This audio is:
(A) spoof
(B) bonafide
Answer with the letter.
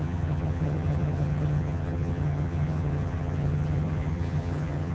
A